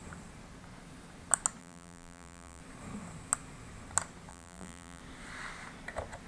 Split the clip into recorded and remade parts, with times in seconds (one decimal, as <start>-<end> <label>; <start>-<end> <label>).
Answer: 0.0-1.6 recorded; 1.6-2.6 remade; 2.6-4.3 recorded; 4.3-5.0 remade; 5.0-6.3 recorded